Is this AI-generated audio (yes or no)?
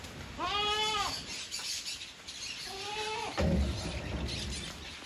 no